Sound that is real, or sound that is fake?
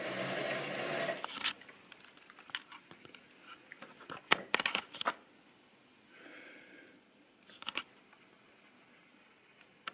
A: real